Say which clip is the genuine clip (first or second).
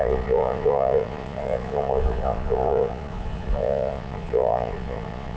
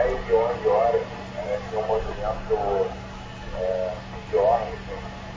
second